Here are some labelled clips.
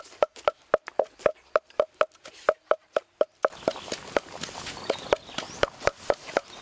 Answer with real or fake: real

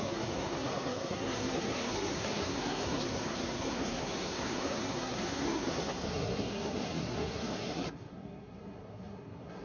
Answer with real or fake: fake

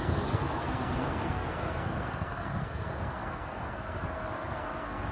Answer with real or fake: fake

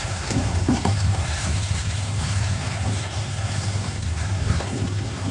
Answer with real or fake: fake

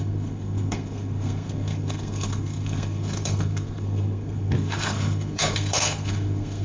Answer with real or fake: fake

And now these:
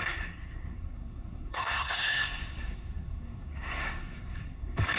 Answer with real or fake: fake